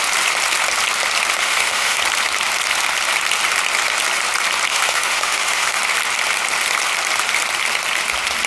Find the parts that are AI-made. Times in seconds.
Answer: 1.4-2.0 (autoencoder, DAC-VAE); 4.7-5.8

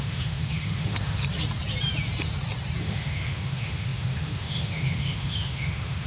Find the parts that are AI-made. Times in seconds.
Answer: 0.0-1.2 (autoencoder, DAC-VAE); 2.8-6.1

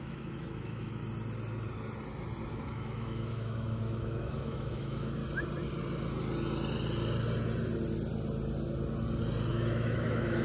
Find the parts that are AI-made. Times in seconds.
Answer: 0.0-1.0 (autoencoder, DAC-VAE); 2.5-5.2; 9.5-10.4

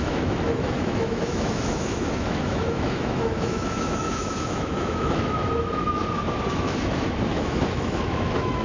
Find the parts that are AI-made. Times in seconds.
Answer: 0.0-6.0 (autoencoder, DAC-VAE); 6.5-8.6

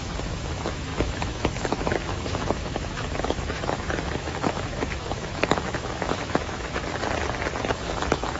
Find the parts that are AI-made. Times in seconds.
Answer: 0.0-6.9 (autoencoder, DAC-VAE); 7.7-8.4

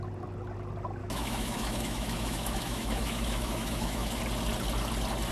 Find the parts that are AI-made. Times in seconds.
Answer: 1.0-4.2 (autoencoder, DAC-VAE)